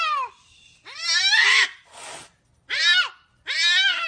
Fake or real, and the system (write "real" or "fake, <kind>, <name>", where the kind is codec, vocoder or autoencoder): real